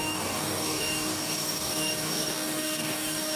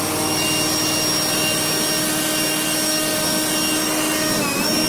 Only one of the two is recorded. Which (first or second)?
second